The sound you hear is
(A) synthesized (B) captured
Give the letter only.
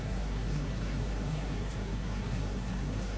A